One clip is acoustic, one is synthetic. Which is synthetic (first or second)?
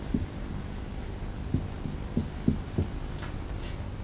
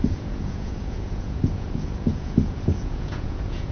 second